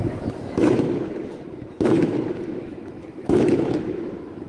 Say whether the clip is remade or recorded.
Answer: remade